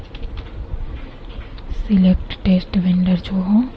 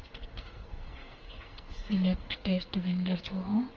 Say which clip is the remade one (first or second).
second